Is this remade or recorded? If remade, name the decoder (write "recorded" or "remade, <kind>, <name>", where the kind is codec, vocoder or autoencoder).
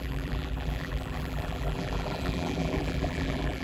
remade, vocoder, BigVGAN v2